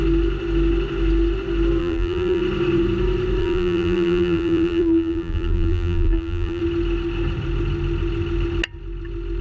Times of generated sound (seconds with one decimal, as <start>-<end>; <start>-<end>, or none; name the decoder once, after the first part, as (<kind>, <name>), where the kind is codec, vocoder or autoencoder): 1.8-2.4 (vocoder, BigVGAN v2); 3.4-6.6